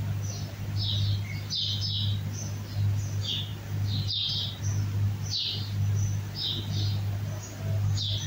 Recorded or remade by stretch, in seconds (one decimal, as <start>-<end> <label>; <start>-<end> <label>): 0.0-8.3 recorded